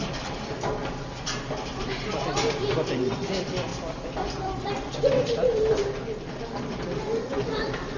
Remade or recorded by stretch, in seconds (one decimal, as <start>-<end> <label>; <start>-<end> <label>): 0.0-0.8 remade; 0.8-1.8 recorded; 1.8-5.8 remade; 5.8-6.7 recorded; 6.7-8.0 remade